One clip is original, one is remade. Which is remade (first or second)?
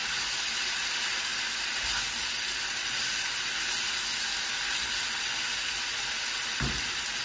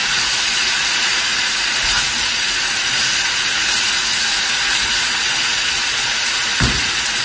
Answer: second